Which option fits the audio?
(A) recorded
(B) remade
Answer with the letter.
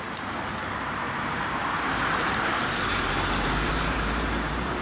B